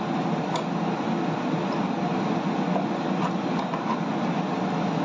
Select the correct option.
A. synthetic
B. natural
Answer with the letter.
B